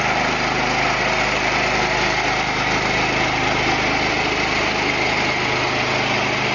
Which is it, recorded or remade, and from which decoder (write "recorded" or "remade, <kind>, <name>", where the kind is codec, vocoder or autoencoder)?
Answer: recorded